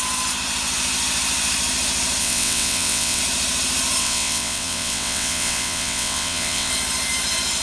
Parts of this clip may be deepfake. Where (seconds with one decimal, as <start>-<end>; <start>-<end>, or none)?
2.2-3.2; 4.0-6.7